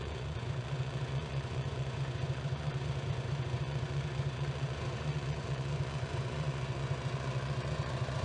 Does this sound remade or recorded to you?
remade